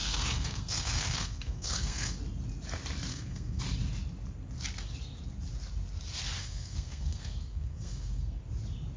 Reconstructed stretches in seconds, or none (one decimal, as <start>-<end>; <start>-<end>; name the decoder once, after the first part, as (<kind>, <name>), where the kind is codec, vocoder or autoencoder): 0.0-2.2 (codec, SNAC); 3.1-3.6; 6.4-8.4